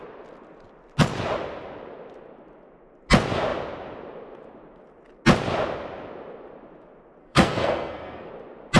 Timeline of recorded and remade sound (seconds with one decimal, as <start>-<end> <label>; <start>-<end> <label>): 0.0-7.2 recorded; 7.2-8.3 remade; 8.3-8.8 recorded